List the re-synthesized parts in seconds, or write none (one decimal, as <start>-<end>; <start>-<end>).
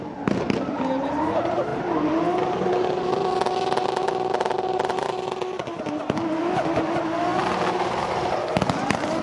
none